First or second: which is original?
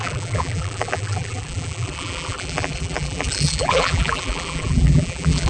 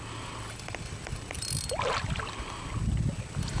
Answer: second